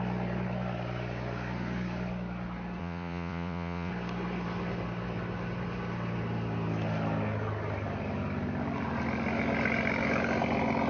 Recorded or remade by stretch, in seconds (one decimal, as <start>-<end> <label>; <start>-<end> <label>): 0.0-2.8 recorded; 2.8-3.9 remade; 3.9-10.9 recorded